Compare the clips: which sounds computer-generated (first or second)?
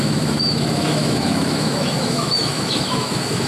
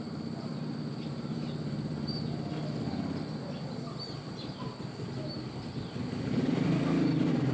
first